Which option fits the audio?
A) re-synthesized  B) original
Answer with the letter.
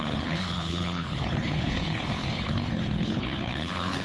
A